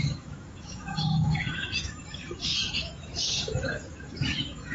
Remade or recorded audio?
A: remade